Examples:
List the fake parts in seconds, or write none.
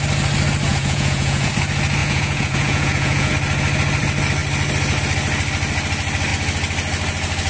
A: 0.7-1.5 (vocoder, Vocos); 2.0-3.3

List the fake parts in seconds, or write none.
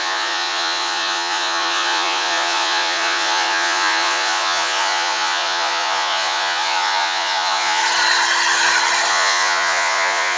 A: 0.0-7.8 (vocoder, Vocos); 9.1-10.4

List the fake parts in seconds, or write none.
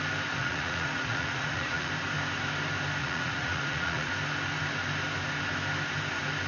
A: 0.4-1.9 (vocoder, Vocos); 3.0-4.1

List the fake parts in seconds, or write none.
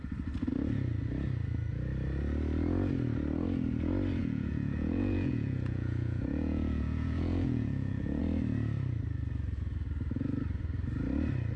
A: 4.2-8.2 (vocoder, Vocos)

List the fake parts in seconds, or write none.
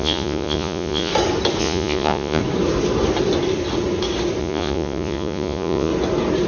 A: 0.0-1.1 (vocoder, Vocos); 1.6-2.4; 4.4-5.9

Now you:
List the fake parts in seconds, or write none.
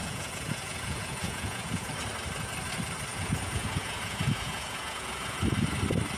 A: 0.0-1.9 (vocoder, Vocos); 3.1-5.4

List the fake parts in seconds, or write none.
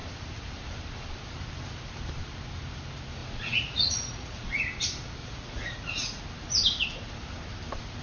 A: 3.2-4.6 (vocoder, Vocos); 5.2-6.2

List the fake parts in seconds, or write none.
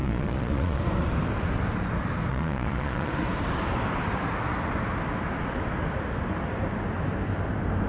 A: 0.0-0.8 (vocoder, Vocos); 2.3-3.1